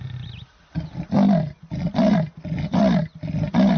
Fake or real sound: real